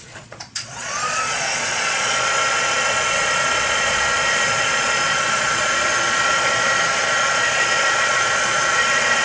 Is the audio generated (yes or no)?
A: yes